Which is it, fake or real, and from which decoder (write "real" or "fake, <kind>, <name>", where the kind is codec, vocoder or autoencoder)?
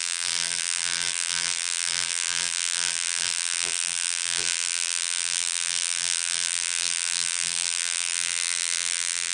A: fake, vocoder, BigVGAN v2